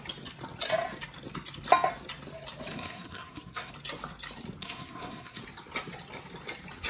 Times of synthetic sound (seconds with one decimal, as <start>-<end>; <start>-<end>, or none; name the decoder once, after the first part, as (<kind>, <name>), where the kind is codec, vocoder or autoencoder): 2.7-3.7 (codec, SNAC); 4.6-5.4